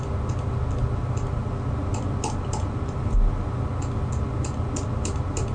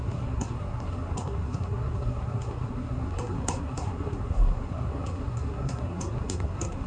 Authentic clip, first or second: first